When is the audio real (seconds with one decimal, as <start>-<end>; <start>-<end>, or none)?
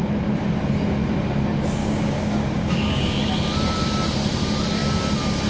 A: 0.0-1.8; 3.3-5.5